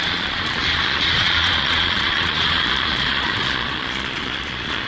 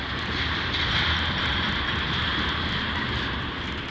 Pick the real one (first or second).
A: second